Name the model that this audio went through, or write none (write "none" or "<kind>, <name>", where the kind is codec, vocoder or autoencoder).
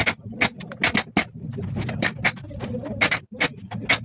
none